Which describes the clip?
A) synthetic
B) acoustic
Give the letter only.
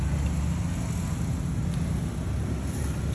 B